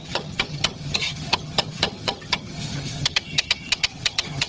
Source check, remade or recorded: remade